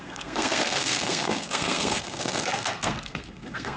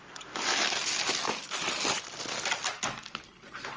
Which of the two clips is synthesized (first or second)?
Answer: first